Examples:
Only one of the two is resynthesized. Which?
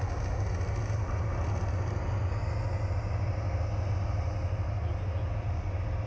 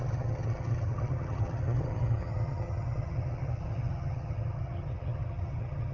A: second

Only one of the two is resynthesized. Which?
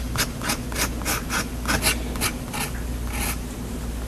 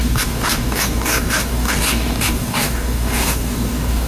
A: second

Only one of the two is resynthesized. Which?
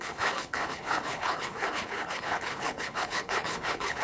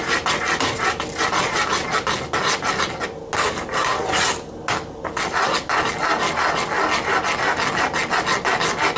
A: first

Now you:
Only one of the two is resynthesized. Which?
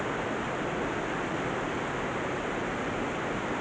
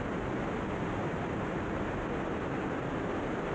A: second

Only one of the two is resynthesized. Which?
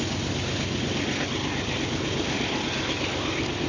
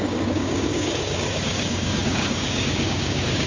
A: second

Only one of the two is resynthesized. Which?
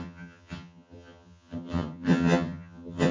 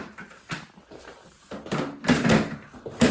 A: first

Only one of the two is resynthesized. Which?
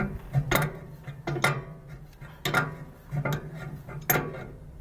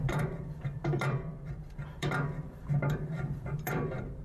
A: second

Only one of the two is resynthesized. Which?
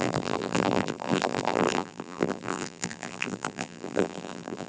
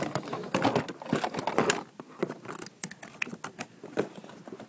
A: first